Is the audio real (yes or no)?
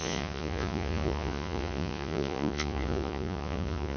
no